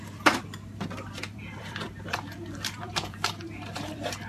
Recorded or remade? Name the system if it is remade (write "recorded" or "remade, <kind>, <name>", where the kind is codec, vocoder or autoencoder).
remade, vocoder, BigVGAN v2